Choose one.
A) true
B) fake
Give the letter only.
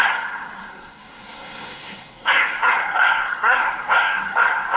B